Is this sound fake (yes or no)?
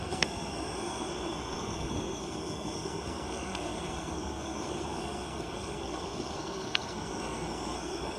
yes